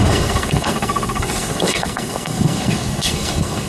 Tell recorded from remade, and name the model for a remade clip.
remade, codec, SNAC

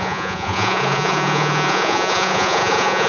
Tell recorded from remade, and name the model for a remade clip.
remade, vocoder, Vocos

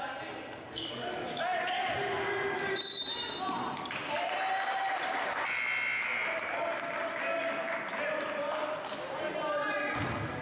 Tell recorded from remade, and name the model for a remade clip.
recorded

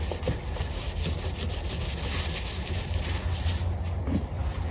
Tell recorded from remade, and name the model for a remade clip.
recorded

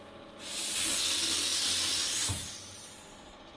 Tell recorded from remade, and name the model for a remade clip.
recorded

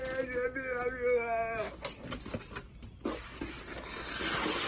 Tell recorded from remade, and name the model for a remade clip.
recorded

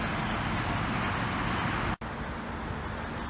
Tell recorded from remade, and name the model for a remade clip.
recorded